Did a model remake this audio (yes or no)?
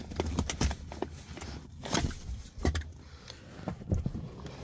no